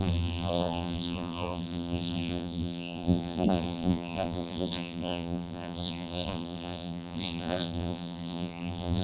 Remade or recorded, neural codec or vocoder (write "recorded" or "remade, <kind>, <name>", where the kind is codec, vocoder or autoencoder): remade, vocoder, BigVGAN v2